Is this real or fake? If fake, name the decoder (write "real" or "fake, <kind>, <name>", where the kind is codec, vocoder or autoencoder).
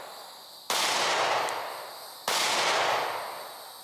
real